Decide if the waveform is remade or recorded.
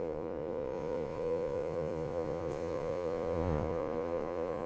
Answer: remade